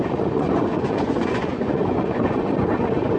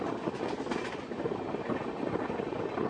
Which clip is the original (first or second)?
second